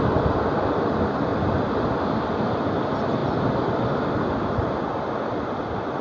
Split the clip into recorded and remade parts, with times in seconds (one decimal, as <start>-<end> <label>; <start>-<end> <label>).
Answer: 0.0-6.0 recorded